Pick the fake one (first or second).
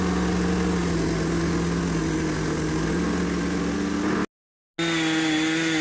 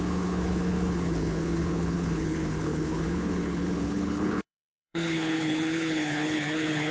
second